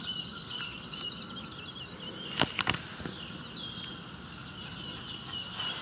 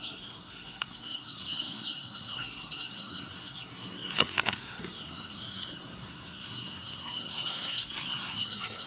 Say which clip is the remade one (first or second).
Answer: second